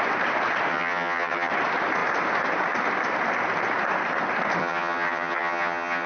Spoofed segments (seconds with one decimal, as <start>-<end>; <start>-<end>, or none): 0.7-1.5; 4.6-6.1